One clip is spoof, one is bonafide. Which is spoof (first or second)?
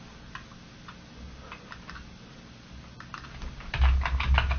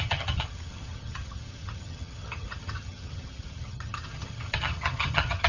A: second